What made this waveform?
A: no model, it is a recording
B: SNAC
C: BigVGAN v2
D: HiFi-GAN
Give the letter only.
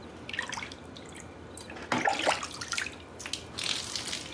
A